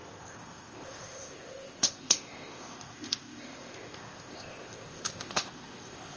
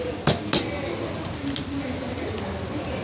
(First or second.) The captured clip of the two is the second